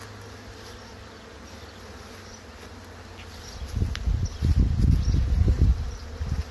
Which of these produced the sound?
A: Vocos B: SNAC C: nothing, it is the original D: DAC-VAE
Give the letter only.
C